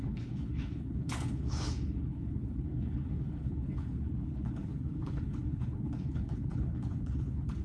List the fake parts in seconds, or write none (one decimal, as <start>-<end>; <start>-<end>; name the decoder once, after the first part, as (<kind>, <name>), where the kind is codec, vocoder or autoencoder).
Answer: 0.0-7.6 (codec, HILCodec)